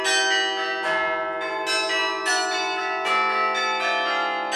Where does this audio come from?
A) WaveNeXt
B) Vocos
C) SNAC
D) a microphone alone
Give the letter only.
D